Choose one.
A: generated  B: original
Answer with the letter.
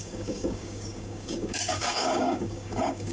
A